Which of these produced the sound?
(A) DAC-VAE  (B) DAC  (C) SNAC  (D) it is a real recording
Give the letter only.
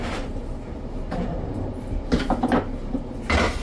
D